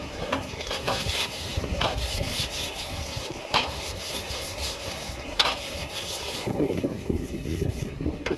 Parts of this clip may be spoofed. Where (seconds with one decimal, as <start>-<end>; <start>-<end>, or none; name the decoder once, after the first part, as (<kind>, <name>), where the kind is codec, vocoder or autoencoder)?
0.0-8.4 (codec, SNAC)